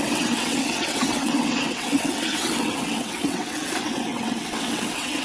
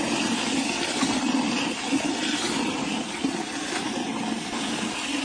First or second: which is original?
second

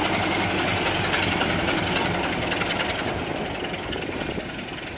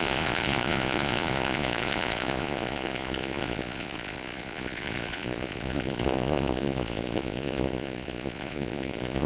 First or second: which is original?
first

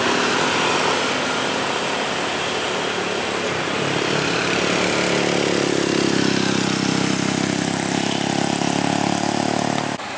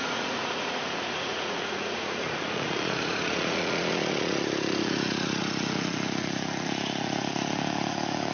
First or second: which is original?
first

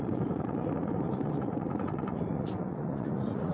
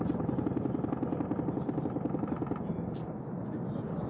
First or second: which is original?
second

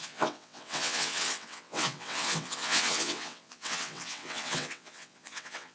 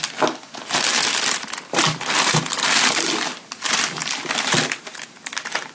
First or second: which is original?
second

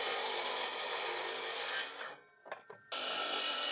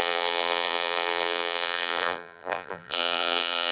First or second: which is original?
first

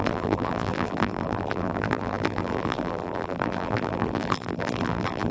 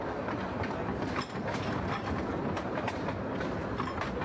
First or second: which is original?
second